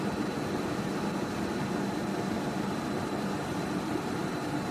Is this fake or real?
real